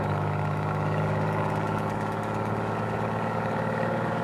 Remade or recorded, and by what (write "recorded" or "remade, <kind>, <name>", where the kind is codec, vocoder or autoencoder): remade, codec, DAC